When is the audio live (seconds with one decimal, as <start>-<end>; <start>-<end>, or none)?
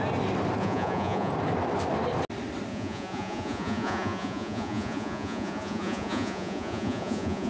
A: 0.0-0.6; 1.3-2.7